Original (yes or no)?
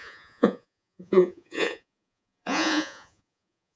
no